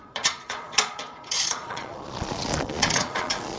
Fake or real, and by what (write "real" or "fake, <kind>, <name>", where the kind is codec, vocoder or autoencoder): fake, vocoder, Vocos